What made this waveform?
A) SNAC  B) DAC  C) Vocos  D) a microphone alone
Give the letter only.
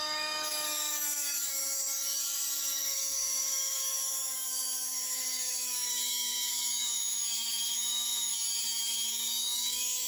B